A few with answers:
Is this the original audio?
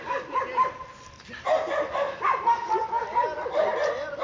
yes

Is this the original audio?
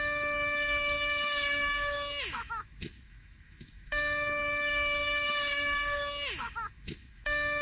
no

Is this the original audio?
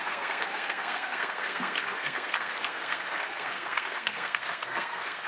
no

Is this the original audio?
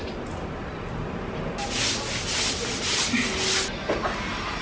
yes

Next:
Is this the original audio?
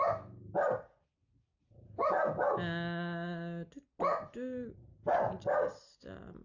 yes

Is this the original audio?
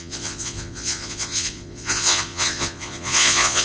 no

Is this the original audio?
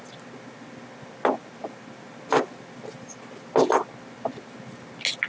yes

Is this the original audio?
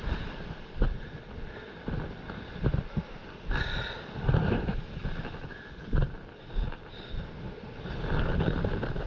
yes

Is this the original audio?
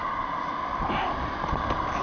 yes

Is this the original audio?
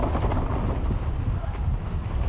yes